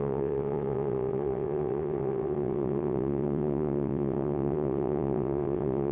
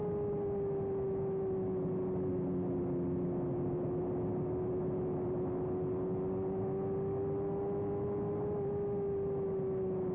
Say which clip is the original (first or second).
second